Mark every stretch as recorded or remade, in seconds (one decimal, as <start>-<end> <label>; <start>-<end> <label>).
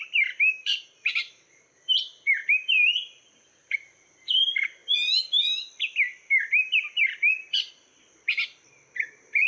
0.0-4.8 remade; 4.8-9.1 recorded; 9.1-9.5 remade